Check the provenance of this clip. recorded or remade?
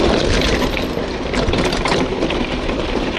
recorded